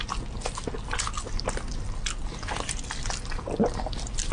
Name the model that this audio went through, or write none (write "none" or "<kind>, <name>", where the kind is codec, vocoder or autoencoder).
none